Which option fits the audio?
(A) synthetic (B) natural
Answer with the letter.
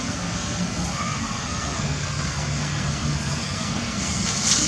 A